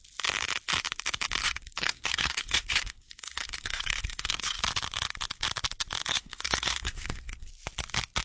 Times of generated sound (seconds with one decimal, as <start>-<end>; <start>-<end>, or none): 1.4-4.6; 6.1-7.5

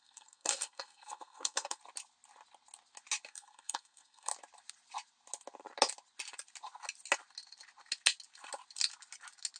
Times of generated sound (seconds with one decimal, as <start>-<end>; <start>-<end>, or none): 0.0-1.8; 3.3-4.3